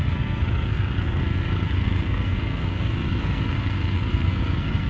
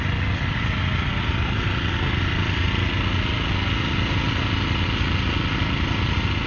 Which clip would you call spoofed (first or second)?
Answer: first